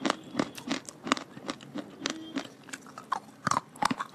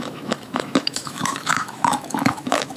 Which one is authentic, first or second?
first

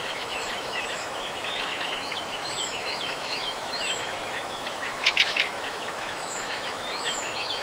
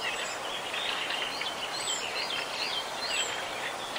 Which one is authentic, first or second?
second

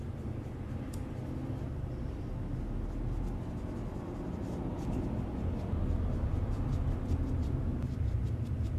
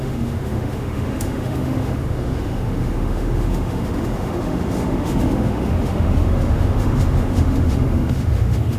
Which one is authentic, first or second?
first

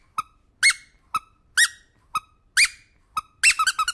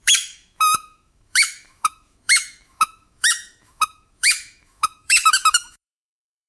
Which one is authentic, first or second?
first